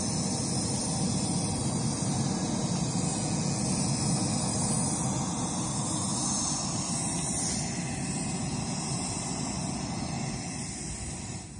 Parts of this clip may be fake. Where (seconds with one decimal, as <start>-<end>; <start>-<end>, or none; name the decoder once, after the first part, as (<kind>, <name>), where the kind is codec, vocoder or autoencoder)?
3.1-3.6 (vocoder, Vocos)